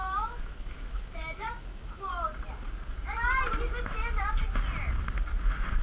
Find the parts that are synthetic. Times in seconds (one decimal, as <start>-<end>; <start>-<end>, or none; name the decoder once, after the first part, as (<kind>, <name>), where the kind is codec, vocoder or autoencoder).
0.0-2.1 (autoencoder, DAC-VAE)